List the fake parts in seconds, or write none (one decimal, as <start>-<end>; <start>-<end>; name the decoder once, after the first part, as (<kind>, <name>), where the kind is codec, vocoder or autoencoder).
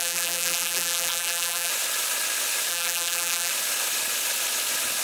0.0-1.7 (vocoder, BigVGAN v2); 2.7-3.5